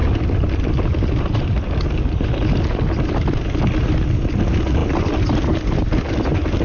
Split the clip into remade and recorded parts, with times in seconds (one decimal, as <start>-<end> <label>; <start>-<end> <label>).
0.0-6.6 recorded